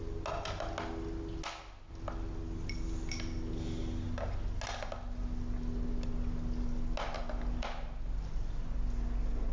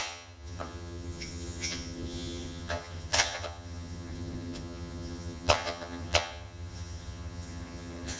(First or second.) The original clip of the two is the first